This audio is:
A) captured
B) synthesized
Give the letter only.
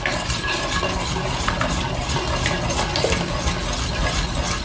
A